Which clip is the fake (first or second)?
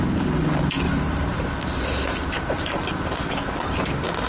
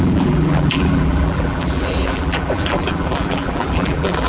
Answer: second